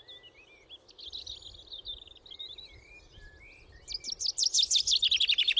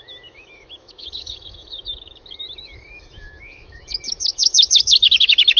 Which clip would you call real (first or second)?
first